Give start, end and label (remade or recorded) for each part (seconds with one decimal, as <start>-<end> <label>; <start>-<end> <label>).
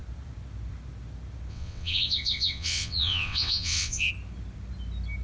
0.0-1.5 recorded; 1.5-4.1 remade; 4.1-5.2 recorded